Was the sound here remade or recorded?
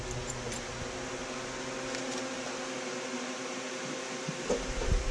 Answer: recorded